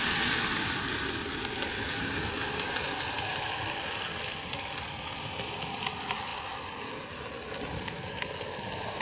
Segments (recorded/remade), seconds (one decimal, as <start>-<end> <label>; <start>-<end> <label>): 0.0-9.0 recorded